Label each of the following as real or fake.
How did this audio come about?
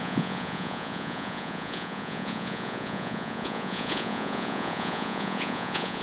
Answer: fake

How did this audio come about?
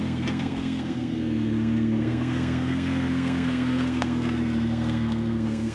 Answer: fake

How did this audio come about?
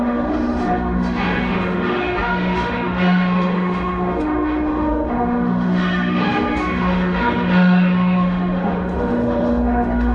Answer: fake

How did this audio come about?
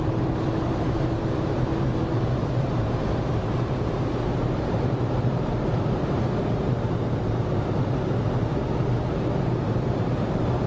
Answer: fake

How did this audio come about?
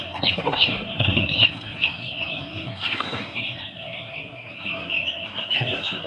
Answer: fake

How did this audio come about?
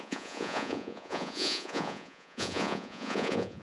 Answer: fake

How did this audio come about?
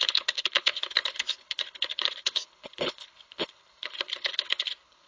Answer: fake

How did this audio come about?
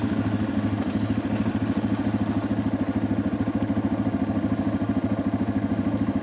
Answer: real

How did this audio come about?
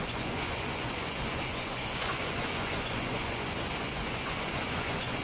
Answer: fake